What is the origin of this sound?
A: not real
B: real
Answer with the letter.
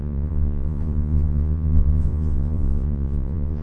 A